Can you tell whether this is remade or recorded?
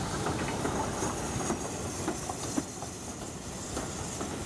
recorded